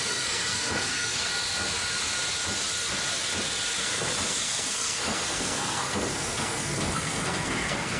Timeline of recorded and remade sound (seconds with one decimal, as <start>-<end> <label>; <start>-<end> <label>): 0.0-1.3 remade; 1.3-3.8 recorded; 3.8-8.0 remade